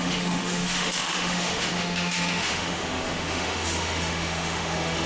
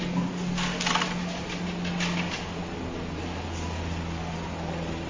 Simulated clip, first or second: first